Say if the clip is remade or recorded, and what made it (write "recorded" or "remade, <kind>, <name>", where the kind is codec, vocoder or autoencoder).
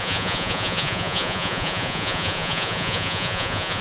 remade, vocoder, Vocos